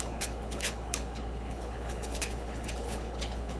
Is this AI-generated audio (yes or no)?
yes